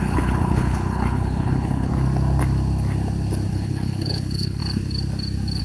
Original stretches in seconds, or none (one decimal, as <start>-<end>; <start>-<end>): 1.9-3.5; 4.6-5.6